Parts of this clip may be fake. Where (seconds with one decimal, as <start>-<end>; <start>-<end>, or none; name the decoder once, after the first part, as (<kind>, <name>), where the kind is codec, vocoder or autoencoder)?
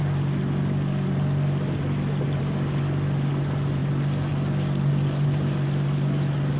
none